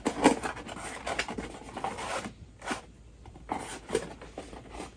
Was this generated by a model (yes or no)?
no